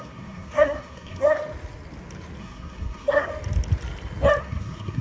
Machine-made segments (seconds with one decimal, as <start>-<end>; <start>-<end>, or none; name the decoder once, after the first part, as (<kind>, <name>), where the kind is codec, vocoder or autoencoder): 0.0-1.4 (codec, SNAC); 2.4-3.3; 4.4-5.0